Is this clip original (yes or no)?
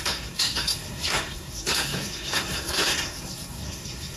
no